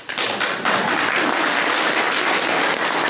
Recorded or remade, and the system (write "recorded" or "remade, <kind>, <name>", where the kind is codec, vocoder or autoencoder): recorded